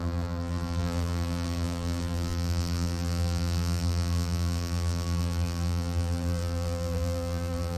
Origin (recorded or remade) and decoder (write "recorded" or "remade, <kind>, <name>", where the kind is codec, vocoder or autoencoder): remade, vocoder, BigVGAN v2